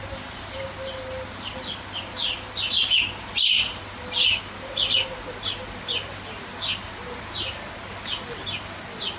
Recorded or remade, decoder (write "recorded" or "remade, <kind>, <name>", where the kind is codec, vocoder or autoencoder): recorded